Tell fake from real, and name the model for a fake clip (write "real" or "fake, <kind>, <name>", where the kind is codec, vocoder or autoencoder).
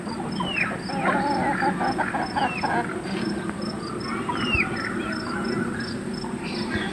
real